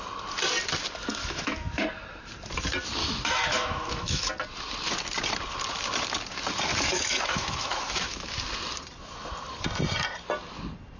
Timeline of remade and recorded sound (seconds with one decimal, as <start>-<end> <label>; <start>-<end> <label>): 0.0-1.1 recorded; 1.1-1.8 remade; 1.8-3.0 recorded; 3.0-4.3 remade; 4.3-6.7 recorded; 6.7-8.4 remade; 8.4-11.0 recorded